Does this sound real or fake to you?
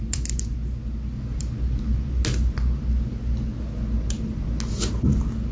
real